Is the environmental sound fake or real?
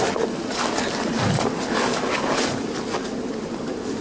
real